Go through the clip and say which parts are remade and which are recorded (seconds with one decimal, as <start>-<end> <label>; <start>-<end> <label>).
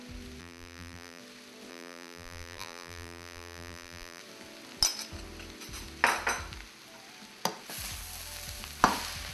0.0-0.4 recorded; 0.4-1.2 remade; 1.2-1.7 recorded; 1.7-4.2 remade; 4.2-9.3 recorded